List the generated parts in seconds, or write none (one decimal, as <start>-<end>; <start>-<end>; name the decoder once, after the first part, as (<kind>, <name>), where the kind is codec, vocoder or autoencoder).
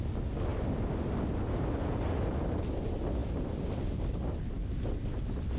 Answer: none